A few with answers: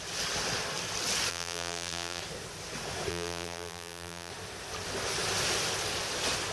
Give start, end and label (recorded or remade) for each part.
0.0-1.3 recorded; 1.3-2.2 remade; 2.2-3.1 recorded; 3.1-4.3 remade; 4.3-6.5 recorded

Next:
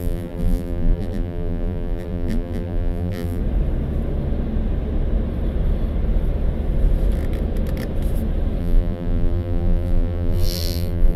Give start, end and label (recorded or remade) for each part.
0.0-3.4 remade; 3.4-8.6 recorded; 8.6-11.2 remade